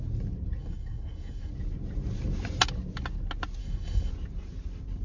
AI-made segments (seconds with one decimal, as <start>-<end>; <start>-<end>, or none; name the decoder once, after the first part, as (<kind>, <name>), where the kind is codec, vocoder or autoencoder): 0.6-1.5 (codec, DAC); 3.6-4.1